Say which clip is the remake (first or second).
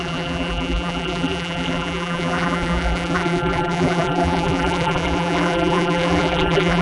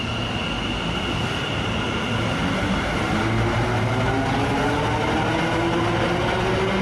first